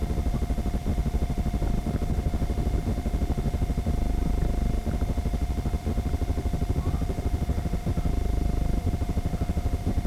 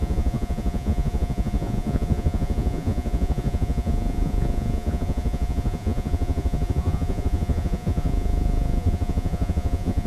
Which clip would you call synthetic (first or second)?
second